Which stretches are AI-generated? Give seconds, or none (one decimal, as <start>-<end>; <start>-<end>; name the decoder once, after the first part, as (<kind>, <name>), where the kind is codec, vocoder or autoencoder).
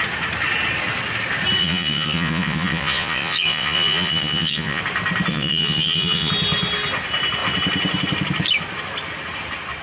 1.6-4.8 (vocoder, Vocos); 5.3-6.3